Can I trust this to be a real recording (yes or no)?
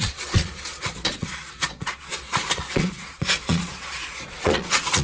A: no